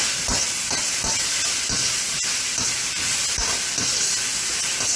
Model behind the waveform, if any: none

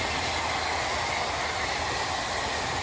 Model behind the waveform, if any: none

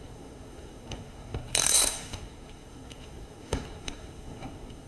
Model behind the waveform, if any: codec, SNAC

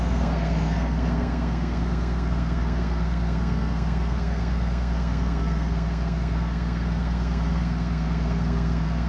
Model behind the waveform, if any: codec, SNAC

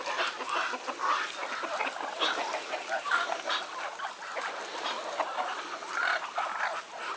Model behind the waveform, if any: none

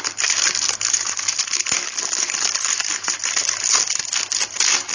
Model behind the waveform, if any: none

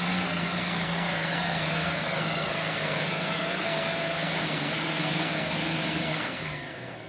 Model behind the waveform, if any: codec, SNAC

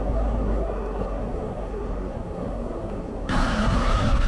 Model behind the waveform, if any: codec, SNAC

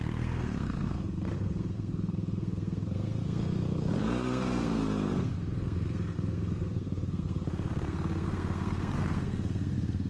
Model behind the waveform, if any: codec, SNAC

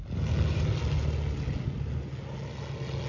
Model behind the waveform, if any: none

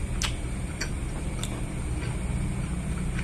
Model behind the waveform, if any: none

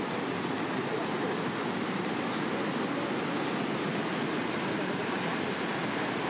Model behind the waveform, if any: none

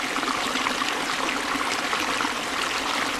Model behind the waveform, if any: none